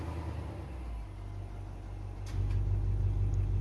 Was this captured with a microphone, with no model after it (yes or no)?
yes